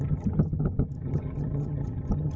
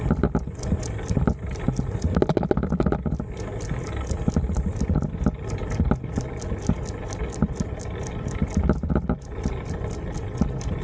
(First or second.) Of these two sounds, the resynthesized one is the first